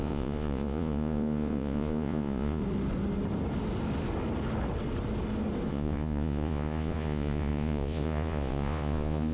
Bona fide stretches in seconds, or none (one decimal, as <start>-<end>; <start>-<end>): 2.6-5.7